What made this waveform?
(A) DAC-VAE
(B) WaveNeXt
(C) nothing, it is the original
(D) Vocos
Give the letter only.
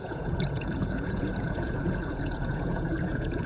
D